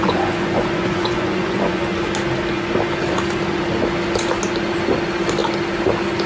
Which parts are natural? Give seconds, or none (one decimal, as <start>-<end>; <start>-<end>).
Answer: 2.0-6.3